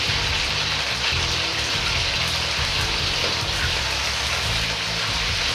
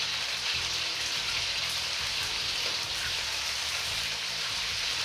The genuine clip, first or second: first